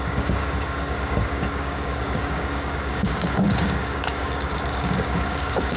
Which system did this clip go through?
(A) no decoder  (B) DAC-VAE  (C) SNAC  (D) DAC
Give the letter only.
D